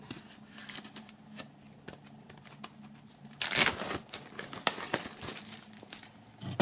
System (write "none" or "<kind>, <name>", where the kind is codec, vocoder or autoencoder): none